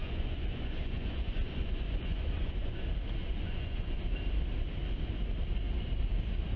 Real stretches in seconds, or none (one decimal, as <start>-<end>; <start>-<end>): 2.8-3.2; 4.0-6.6